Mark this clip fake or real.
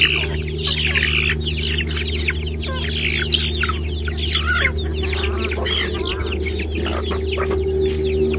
real